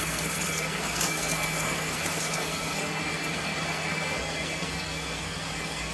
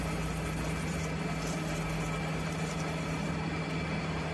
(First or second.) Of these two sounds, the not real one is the first